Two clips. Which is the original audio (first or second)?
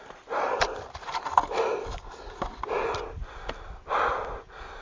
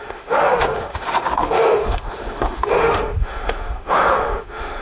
first